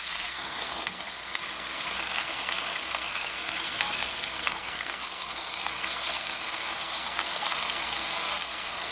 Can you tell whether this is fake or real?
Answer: fake